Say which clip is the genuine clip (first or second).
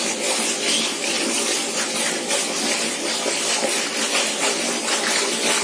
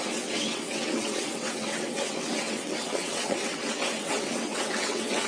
first